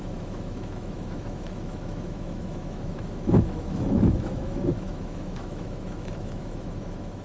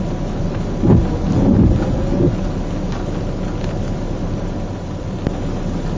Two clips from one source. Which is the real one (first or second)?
second